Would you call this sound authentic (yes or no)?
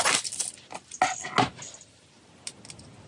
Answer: yes